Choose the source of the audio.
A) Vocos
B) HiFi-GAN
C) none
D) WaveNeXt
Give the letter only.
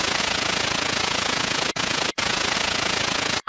A